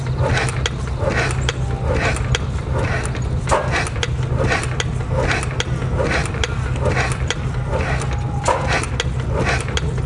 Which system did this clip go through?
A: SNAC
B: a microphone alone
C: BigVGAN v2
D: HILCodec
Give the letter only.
B